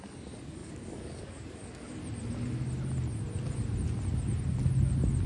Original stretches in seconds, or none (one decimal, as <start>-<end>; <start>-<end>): 2.0-5.3